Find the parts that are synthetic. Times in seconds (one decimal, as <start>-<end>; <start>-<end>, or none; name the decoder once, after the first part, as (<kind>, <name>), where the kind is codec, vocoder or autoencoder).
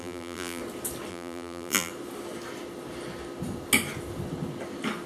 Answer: 0.0-0.6 (vocoder, BigVGAN v2); 1.1-1.9